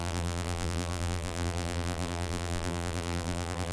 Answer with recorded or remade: remade